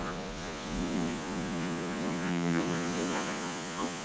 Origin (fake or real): fake